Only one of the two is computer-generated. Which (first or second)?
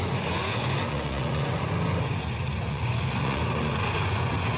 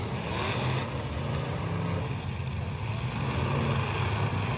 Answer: first